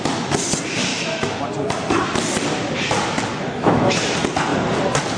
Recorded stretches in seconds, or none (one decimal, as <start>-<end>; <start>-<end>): 0.0-0.9; 1.4-3.3; 4.0-5.2